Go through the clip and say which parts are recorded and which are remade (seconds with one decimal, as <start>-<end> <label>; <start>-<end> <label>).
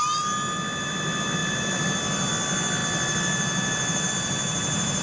0.0-5.0 recorded